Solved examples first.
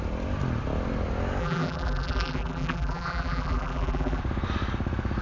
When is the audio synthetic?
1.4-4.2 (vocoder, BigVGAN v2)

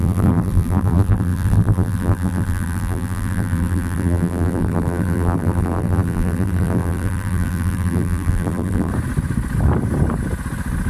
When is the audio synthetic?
0.0-8.9 (vocoder, BigVGAN v2)

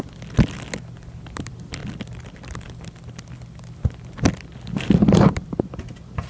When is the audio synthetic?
none